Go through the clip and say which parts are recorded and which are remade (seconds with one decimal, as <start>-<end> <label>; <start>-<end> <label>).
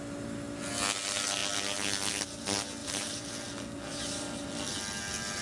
0.0-2.8 recorded; 2.8-3.3 remade; 3.3-3.9 recorded; 3.9-4.5 remade; 4.5-5.4 recorded